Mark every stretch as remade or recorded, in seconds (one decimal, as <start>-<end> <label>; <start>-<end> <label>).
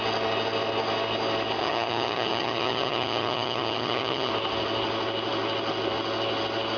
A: 0.0-1.6 recorded; 1.6-4.3 remade; 4.3-6.8 recorded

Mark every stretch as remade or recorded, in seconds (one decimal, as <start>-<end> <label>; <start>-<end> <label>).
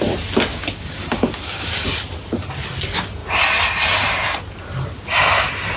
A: 0.0-0.5 recorded; 0.5-1.7 remade; 1.7-5.8 recorded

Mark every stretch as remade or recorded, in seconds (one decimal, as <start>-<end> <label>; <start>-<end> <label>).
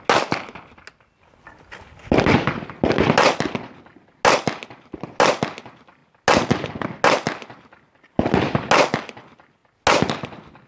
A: 0.0-10.7 recorded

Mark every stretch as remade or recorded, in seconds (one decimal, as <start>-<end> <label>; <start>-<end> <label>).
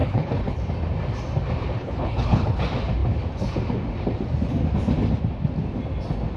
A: 0.0-0.6 remade; 0.6-1.8 recorded; 1.8-2.6 remade; 2.6-6.4 recorded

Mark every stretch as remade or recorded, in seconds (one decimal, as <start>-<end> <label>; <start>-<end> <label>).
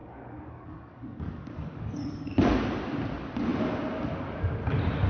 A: 0.0-2.6 remade; 2.6-5.1 recorded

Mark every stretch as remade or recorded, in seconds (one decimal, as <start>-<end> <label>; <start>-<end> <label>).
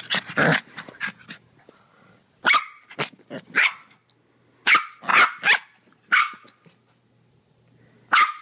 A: 0.0-8.4 recorded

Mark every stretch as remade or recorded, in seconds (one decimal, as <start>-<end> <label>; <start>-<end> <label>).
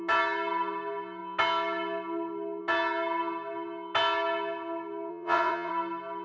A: 0.0-5.1 recorded; 5.1-5.7 remade; 5.7-6.2 recorded